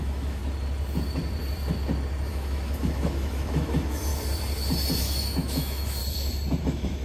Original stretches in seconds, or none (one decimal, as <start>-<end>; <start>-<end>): 0.4-2.3; 4.1-5.0; 6.0-6.6